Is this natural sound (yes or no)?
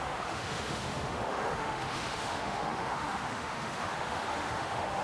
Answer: no